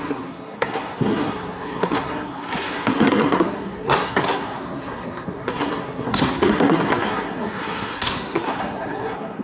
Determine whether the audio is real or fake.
fake